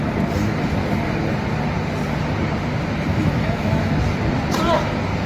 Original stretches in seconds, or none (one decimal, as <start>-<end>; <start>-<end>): 0.0-3.1; 4.0-5.3